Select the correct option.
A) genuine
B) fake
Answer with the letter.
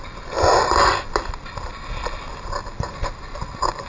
A